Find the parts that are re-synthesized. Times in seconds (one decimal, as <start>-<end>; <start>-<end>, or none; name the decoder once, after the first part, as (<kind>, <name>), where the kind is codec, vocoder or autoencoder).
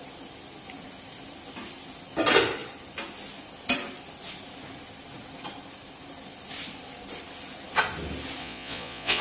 8.4-9.2 (vocoder, Vocos)